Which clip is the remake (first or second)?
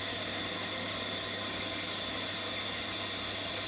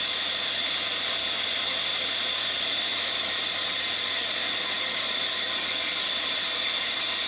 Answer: second